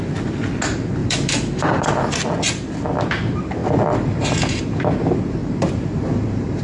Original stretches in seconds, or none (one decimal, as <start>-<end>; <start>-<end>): 0.0-1.0; 2.1-5.4